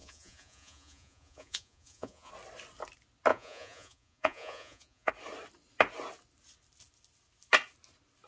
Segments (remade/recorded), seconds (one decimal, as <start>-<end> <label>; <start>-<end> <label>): 0.0-2.3 remade; 2.3-3.3 recorded; 3.3-5.1 remade; 5.1-8.3 recorded